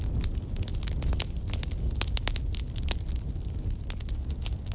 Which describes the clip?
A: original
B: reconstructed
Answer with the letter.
A